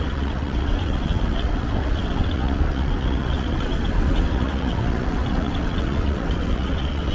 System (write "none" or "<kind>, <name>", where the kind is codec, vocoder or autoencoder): vocoder, WaveNeXt